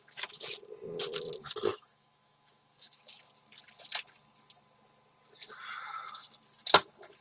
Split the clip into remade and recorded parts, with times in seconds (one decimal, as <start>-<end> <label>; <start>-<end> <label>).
0.0-1.7 recorded; 1.7-3.2 remade; 3.2-7.2 recorded